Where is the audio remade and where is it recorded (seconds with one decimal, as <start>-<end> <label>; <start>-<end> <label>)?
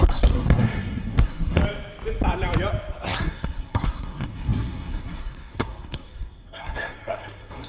0.0-1.6 remade; 1.6-3.2 recorded; 3.2-7.7 remade